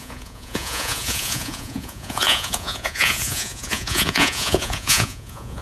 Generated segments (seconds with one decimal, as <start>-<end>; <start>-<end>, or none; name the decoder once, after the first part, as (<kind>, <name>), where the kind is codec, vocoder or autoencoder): 0.0-5.6 (vocoder, Vocos)